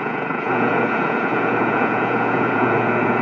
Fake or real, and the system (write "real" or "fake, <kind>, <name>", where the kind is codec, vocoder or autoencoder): fake, vocoder, Vocos